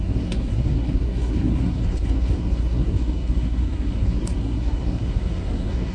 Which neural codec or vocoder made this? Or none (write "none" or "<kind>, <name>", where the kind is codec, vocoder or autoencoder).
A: codec, SNAC